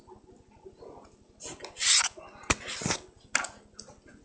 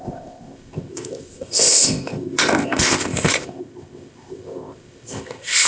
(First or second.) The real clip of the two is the first